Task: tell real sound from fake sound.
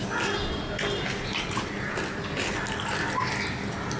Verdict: real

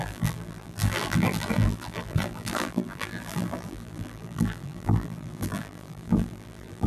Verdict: fake